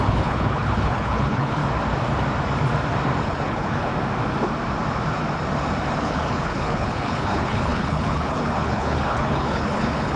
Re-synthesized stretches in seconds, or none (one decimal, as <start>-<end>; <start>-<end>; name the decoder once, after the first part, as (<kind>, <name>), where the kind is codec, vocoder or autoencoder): 0.0-1.6 (codec, HILCodec); 3.2-3.9; 6.0-10.2